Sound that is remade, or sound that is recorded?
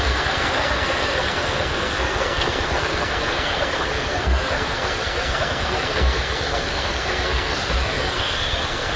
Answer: remade